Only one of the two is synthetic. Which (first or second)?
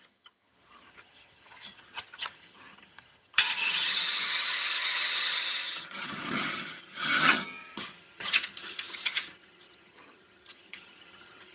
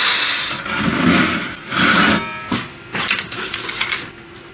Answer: first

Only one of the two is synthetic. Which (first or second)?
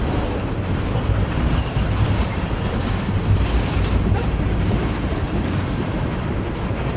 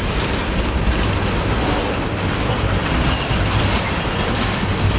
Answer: first